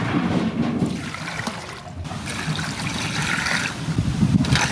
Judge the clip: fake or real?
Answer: fake